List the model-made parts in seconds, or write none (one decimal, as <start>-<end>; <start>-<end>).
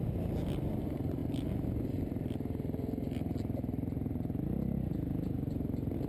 none